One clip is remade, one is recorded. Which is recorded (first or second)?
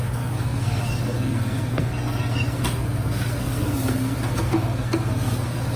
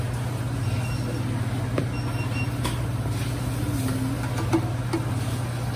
second